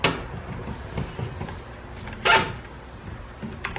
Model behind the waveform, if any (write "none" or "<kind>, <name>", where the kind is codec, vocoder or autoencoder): none